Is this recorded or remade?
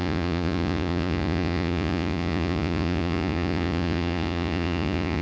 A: remade